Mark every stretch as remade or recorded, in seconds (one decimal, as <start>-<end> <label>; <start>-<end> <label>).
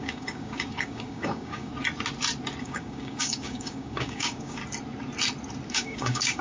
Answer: 0.0-1.7 remade; 1.7-2.6 recorded; 2.6-4.6 remade; 4.6-5.7 recorded; 5.7-6.4 remade